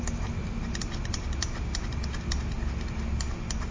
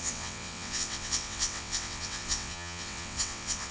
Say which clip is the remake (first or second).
second